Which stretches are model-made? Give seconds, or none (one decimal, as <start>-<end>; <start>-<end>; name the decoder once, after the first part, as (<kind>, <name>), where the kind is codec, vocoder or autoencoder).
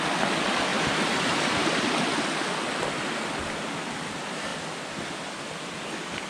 0.7-2.2 (vocoder, BigVGAN v2)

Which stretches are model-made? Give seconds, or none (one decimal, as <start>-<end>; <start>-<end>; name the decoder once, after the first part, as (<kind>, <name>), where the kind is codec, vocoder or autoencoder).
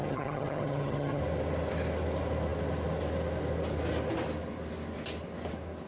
0.0-1.2 (vocoder, HiFi-GAN)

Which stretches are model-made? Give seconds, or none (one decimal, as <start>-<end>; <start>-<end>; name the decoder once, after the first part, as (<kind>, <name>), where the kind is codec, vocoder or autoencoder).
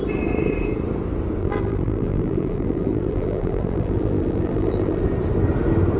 1.4-5.0 (vocoder, BigVGAN v2)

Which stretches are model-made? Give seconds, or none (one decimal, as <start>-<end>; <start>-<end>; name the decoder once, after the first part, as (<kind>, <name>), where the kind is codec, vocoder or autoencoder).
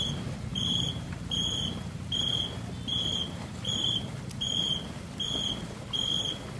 0.5-1.1 (vocoder, BigVGAN v2); 2.9-4.9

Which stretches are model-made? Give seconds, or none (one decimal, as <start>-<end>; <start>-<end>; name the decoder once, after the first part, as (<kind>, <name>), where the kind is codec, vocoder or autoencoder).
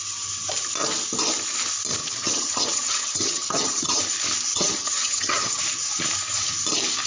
2.0-4.0 (vocoder, HiFi-GAN); 4.5-5.6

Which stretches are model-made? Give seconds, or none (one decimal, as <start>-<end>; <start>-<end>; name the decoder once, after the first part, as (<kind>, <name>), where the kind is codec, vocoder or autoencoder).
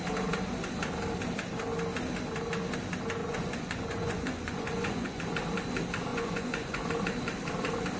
3.2-5.2 (vocoder, Vocos); 6.1-6.8